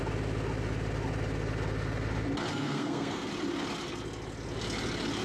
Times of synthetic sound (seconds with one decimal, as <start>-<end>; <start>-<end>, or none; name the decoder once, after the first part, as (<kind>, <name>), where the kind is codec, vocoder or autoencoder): 2.5-3.3 (codec, SNAC)